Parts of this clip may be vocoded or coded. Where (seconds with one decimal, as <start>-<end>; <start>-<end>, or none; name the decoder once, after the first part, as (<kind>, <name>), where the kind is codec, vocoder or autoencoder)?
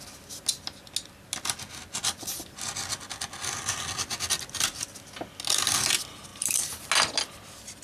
6.3-6.9 (vocoder, BigVGAN v2)